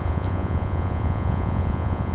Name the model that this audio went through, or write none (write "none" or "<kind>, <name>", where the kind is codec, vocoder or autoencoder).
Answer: vocoder, Vocos